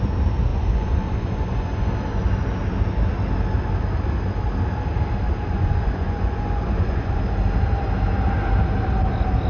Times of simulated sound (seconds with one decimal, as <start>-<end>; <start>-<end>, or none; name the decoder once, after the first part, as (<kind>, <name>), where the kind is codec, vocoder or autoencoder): 0.5-1.9 (vocoder, Vocos); 5.5-7.2